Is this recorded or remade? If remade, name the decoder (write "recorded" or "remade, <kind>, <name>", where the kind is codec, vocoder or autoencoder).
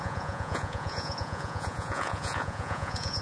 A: remade, vocoder, Vocos